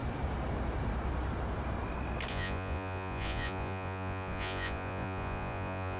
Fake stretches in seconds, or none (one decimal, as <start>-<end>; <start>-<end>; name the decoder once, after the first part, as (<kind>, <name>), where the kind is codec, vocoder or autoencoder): 2.3-6.0 (vocoder, Vocos)